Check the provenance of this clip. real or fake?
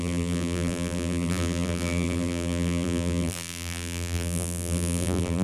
fake